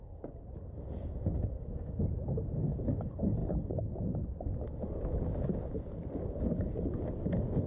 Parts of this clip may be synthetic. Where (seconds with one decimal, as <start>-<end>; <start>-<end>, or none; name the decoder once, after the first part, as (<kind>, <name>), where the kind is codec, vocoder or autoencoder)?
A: 3.4-4.5 (vocoder, BigVGAN v2)